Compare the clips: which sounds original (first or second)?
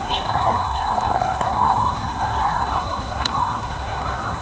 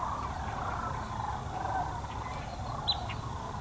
second